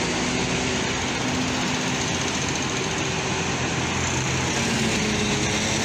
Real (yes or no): yes